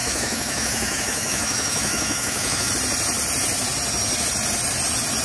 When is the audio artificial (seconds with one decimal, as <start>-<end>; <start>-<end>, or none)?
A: 0.0-2.7